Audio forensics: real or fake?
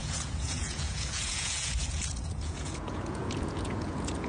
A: fake